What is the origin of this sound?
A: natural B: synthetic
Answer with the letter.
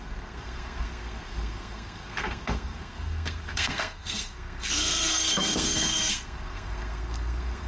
B